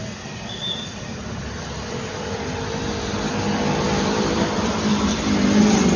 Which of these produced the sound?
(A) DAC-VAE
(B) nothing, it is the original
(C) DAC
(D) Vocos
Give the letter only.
B